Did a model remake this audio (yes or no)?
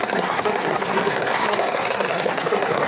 yes